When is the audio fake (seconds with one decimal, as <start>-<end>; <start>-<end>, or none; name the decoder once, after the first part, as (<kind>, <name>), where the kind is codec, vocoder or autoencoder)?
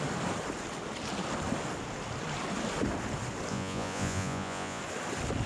3.5-4.8 (vocoder, Vocos)